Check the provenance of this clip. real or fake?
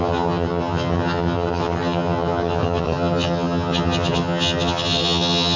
fake